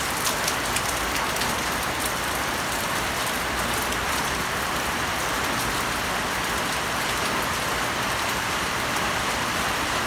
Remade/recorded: remade